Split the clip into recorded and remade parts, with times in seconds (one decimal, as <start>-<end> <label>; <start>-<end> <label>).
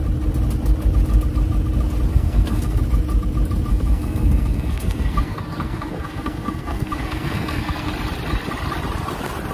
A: 0.0-2.1 recorded; 2.1-2.8 remade; 2.8-3.7 recorded; 3.7-7.9 remade; 7.9-9.5 recorded